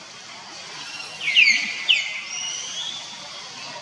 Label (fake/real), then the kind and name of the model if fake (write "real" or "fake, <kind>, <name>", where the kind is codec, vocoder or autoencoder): real